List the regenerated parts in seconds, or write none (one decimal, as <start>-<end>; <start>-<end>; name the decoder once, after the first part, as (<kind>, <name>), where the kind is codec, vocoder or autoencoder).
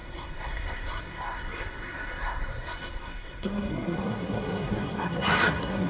0.0-5.9 (codec, SNAC)